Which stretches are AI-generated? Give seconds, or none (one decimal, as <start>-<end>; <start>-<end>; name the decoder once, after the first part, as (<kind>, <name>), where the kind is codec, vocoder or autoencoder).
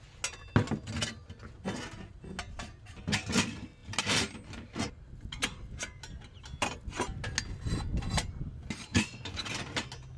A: 8.9-9.5 (vocoder, Vocos)